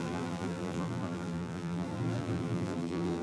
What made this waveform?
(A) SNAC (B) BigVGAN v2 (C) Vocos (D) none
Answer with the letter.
B